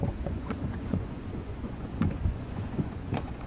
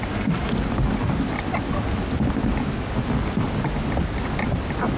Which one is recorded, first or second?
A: second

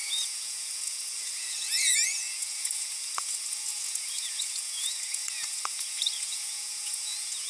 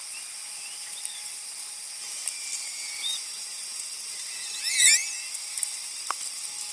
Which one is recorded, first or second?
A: second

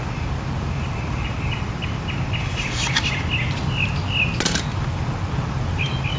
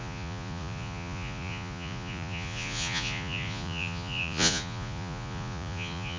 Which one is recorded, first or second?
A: first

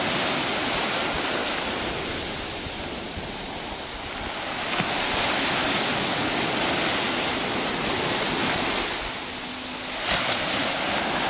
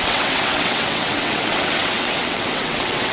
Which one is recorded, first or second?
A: first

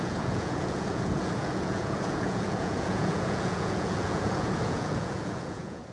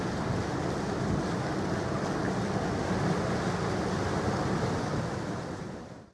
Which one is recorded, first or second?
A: second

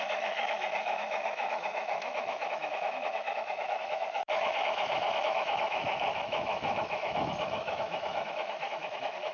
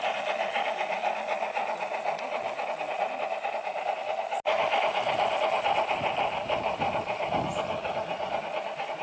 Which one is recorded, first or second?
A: second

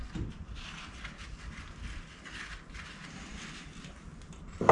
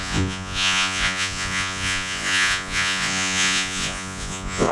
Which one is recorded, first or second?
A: first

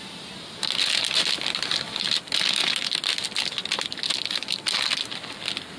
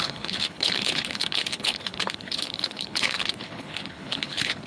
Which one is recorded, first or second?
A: first